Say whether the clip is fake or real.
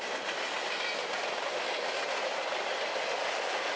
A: real